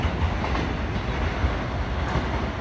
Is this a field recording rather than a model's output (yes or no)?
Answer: yes